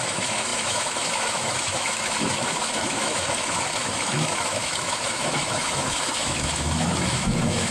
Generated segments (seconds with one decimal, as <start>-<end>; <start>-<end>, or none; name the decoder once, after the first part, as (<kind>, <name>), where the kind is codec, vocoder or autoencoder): 0.0-7.7 (autoencoder, DAC-VAE)